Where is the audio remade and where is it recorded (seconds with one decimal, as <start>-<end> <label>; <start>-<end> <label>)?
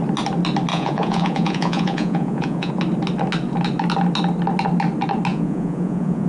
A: 0.0-0.7 recorded; 0.7-2.7 remade; 2.7-5.3 recorded; 5.3-6.3 remade